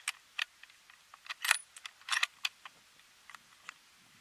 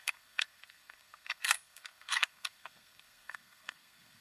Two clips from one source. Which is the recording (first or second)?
first